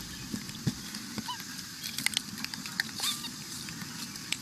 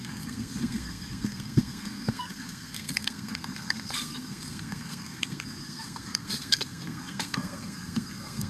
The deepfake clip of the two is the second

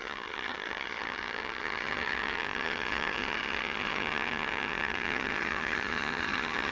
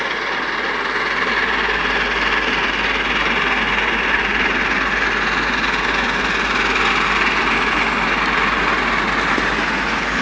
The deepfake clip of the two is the first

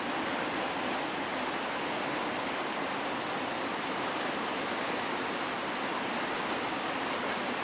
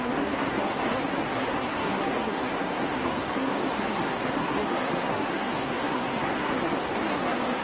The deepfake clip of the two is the second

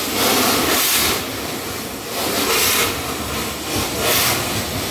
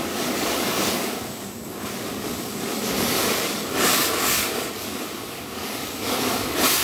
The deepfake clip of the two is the second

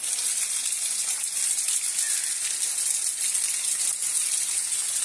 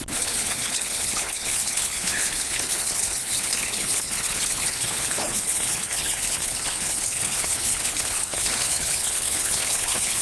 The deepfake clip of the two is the second